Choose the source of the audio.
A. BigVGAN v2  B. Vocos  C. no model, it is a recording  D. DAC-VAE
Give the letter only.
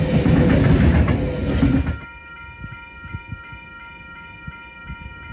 C